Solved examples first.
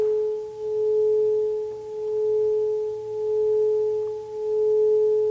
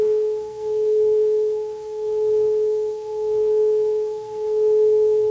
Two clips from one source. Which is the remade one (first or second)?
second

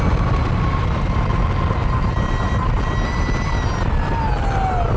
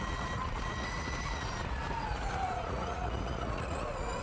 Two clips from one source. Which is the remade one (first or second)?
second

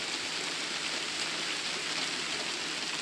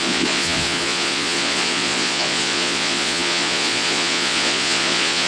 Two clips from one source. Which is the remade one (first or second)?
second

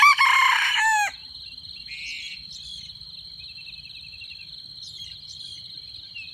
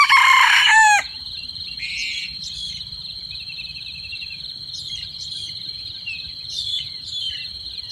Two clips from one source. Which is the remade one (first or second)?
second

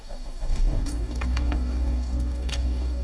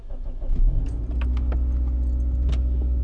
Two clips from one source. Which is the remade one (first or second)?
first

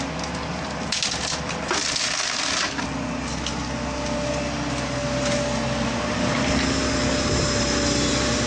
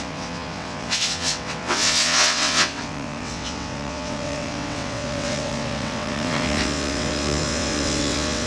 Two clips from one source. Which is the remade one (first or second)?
second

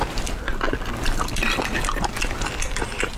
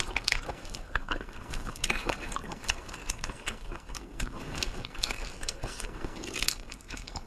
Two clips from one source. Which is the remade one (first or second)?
second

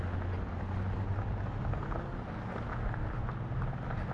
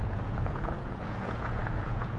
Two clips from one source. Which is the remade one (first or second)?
second